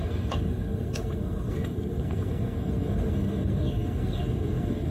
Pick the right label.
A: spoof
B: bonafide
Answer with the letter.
A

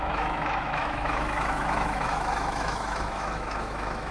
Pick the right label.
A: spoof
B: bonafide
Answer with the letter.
A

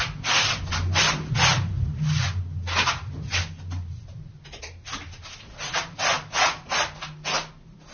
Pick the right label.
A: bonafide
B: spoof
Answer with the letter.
A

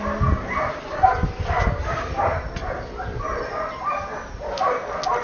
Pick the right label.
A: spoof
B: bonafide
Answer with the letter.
B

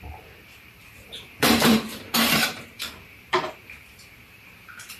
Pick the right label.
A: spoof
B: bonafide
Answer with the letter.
A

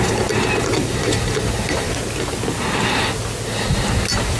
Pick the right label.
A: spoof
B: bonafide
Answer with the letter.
B